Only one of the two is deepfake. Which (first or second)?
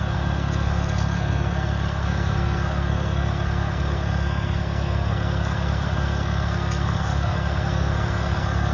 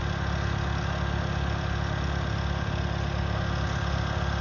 first